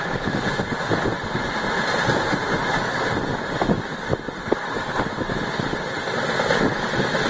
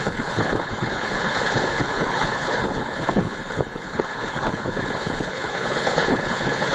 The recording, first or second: first